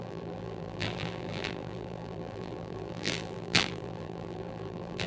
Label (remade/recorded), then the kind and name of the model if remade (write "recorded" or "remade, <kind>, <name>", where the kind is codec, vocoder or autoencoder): remade, vocoder, BigVGAN v2